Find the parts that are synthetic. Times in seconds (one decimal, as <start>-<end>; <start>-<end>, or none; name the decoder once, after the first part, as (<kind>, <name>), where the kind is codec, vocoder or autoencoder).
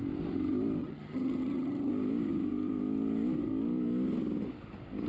0.8-1.9 (vocoder, HiFi-GAN)